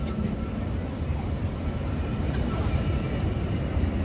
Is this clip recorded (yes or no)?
yes